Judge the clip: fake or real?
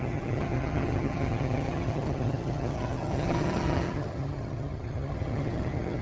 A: fake